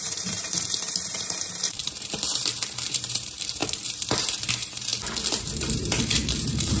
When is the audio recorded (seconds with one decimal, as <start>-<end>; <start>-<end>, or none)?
4.9-5.4